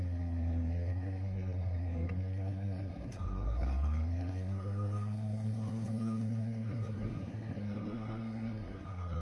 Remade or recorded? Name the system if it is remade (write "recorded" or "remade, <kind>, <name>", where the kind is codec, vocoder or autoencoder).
remade, codec, SNAC